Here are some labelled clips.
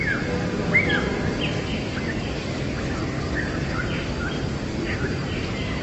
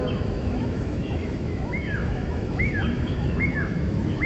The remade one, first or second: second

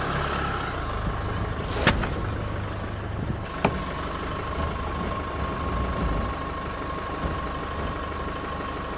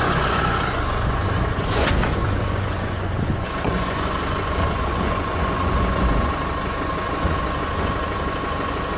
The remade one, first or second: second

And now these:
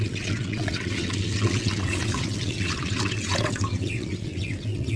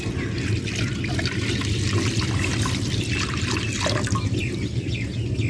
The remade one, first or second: first